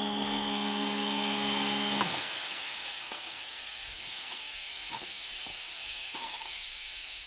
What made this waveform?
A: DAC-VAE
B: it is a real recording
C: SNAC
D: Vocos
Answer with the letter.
C